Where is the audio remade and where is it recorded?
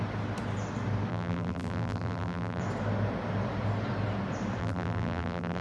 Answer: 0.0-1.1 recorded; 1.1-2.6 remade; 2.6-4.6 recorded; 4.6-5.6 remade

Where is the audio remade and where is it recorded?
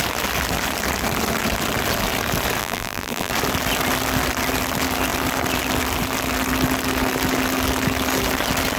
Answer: 0.0-2.6 recorded; 2.6-3.3 remade; 3.3-8.8 recorded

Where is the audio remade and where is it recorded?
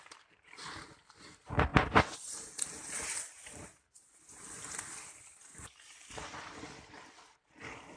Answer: 0.0-5.5 recorded; 5.5-6.3 remade; 6.3-8.0 recorded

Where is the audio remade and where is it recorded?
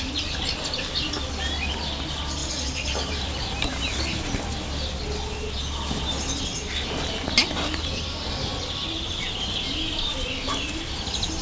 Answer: 0.0-2.4 recorded; 2.4-4.0 remade; 4.0-11.4 recorded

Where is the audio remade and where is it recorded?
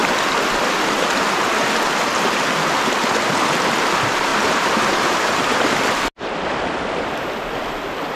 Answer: 0.0-4.3 recorded; 4.3-5.4 remade; 5.4-8.2 recorded